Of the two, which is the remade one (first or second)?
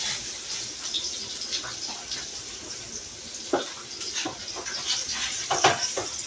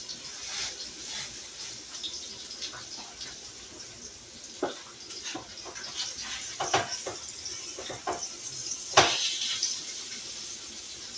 first